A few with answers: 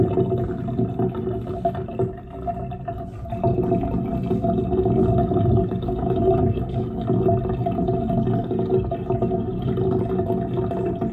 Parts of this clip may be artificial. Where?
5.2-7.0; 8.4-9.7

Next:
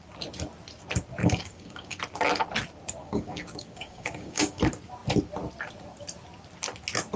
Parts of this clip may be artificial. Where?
1.2-2.0; 3.0-4.6